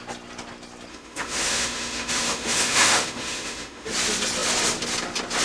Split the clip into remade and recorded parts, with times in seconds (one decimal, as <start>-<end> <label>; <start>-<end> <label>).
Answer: 0.0-0.9 recorded; 0.9-3.9 remade; 3.9-5.4 recorded